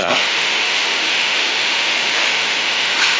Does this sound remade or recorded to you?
remade